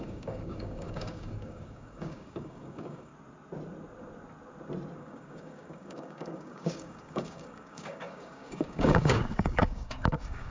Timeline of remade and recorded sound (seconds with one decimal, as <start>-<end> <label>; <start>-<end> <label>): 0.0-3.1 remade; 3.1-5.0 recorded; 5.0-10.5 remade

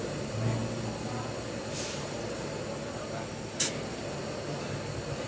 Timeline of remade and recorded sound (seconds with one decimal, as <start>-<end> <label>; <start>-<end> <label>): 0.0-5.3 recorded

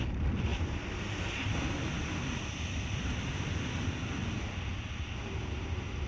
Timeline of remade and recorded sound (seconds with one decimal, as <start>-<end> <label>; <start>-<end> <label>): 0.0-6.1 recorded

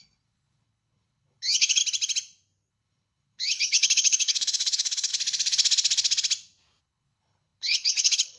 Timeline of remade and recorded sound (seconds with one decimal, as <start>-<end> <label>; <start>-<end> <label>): 0.0-1.8 remade; 1.8-2.7 recorded; 2.7-5.1 remade; 5.1-6.8 recorded; 6.8-8.4 remade

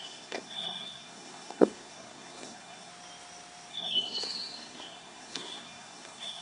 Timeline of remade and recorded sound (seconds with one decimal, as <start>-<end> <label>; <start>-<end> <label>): 0.0-2.9 remade; 2.9-3.7 recorded; 3.7-6.4 remade

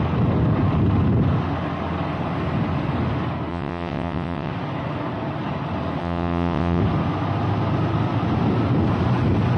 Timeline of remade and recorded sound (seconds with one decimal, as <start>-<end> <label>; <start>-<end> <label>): 0.0-3.5 recorded; 3.5-4.5 remade; 4.5-6.0 recorded; 6.0-6.8 remade; 6.8-9.6 recorded

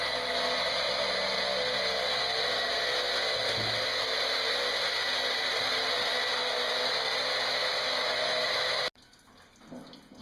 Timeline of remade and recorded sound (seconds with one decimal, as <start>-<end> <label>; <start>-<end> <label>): 0.0-7.6 recorded; 7.6-8.8 remade; 8.8-10.2 recorded